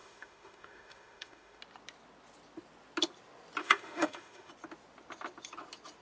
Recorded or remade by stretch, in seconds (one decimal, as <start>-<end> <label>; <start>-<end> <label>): 0.0-1.6 remade; 1.6-3.6 recorded; 3.6-4.5 remade; 4.5-6.0 recorded